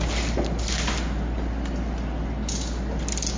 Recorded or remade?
recorded